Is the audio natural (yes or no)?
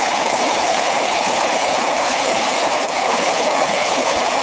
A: no